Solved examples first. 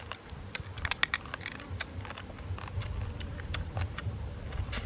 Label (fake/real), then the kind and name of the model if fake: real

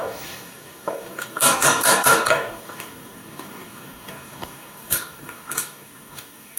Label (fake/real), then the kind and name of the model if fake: fake, codec, DAC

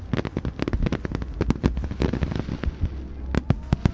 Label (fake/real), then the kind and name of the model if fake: real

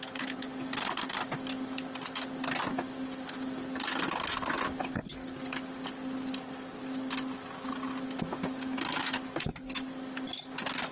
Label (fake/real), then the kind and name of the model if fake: real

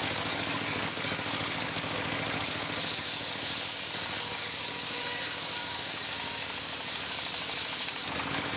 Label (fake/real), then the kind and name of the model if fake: fake, codec, DAC